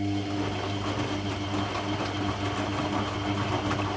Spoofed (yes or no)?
no